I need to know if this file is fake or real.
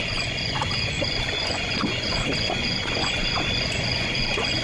fake